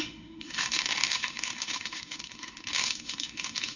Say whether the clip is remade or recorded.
remade